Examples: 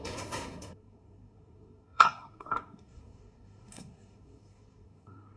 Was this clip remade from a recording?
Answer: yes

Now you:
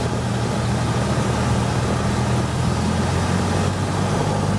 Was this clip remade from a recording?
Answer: no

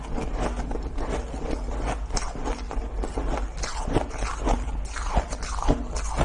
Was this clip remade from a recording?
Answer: no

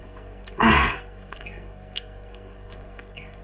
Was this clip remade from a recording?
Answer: yes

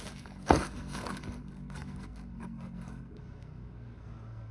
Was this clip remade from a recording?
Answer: yes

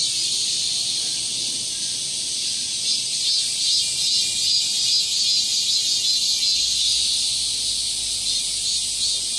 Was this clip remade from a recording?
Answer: no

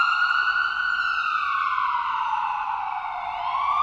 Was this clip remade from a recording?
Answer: no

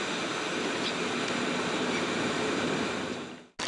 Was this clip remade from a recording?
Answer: no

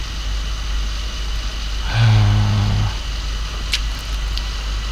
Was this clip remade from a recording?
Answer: no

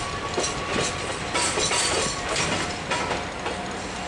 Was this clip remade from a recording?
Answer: no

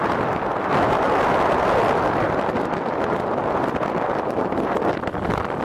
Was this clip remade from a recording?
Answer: no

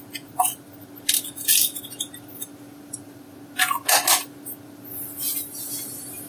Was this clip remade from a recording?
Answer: no